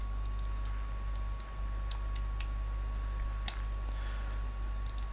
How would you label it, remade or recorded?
recorded